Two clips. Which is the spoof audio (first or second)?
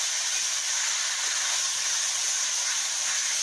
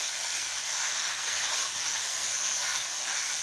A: second